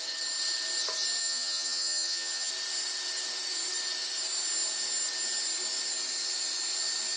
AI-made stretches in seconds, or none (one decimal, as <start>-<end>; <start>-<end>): 1.2-2.5